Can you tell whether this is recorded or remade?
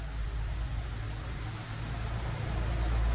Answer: recorded